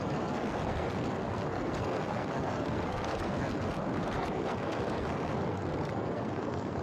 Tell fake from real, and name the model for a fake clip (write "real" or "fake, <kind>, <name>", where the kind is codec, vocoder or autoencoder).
fake, codec, SNAC